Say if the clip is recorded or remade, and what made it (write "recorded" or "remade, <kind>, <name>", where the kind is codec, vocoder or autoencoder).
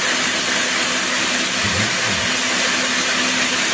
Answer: recorded